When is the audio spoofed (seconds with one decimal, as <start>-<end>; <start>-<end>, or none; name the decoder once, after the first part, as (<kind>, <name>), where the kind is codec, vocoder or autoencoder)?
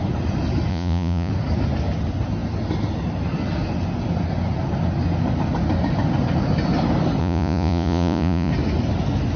0.7-1.3 (vocoder, Vocos); 7.2-8.5